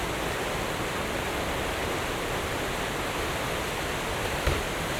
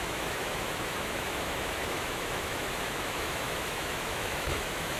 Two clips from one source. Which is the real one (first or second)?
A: first